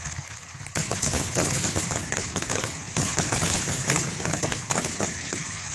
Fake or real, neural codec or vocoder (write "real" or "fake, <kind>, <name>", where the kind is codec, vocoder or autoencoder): fake, codec, HILCodec